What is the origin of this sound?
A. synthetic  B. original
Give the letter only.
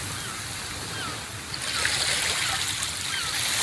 B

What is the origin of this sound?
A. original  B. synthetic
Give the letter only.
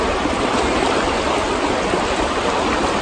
A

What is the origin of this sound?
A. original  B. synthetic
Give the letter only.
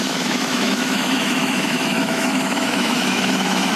B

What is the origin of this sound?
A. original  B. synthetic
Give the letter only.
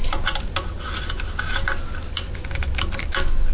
A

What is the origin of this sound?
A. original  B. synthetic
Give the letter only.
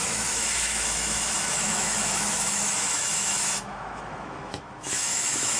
B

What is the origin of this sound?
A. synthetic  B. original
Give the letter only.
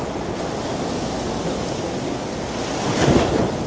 B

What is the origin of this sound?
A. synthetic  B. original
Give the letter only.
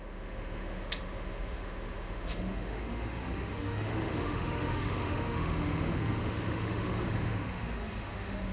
A